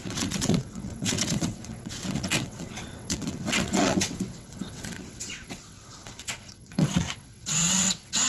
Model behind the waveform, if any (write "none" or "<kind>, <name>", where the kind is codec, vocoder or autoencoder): vocoder, WaveNeXt